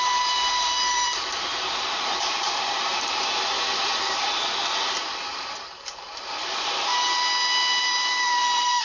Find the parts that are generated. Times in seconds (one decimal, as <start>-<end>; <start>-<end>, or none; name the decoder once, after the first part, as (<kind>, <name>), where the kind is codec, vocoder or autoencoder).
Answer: 0.0-6.9 (vocoder, BigVGAN v2); 7.8-8.8